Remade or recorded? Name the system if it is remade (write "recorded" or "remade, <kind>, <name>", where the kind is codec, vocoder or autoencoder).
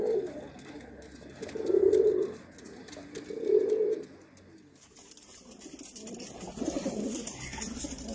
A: recorded